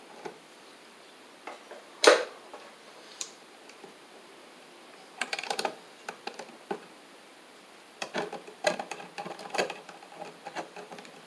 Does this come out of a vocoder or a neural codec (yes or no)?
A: yes